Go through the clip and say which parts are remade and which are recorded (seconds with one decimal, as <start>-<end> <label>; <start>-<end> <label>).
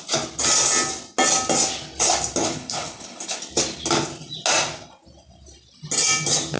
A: 0.0-2.4 recorded; 2.4-3.4 remade; 3.4-6.6 recorded